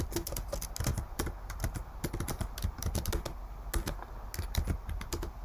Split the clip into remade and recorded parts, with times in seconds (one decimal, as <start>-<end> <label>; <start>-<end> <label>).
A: 0.0-5.4 recorded